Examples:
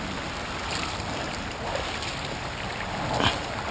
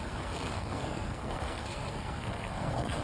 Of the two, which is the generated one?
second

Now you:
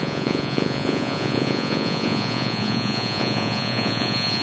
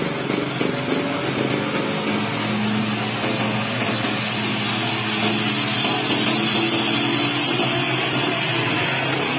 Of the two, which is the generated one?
first